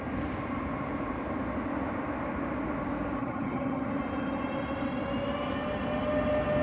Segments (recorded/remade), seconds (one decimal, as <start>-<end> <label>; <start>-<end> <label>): 0.0-3.2 recorded; 3.2-3.9 remade; 3.9-6.6 recorded